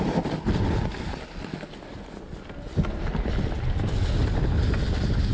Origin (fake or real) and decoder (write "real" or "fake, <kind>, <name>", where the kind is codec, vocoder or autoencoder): real